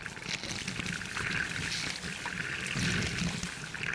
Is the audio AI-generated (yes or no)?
no